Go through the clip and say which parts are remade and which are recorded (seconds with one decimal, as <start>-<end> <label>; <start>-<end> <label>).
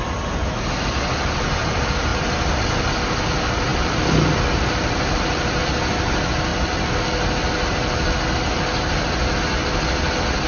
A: 0.0-2.1 recorded; 2.1-3.2 remade; 3.2-3.7 recorded; 3.7-5.6 remade; 5.6-6.5 recorded; 6.5-7.0 remade; 7.0-10.5 recorded